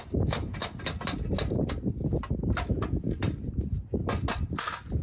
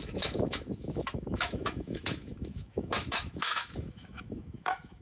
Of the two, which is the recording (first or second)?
first